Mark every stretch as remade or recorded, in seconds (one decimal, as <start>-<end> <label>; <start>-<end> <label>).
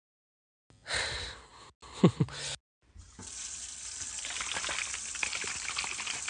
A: 0.0-6.3 recorded